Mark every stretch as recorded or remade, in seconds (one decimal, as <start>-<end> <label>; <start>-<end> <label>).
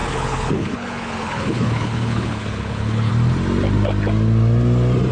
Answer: 0.0-3.1 remade; 3.1-5.1 recorded